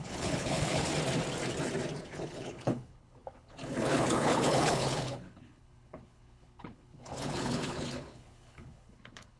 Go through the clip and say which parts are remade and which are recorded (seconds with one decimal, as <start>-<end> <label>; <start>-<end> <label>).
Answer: 0.0-0.9 remade; 0.9-2.0 recorded; 2.0-9.4 remade